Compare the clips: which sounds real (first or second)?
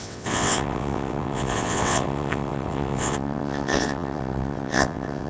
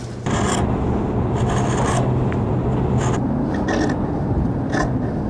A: second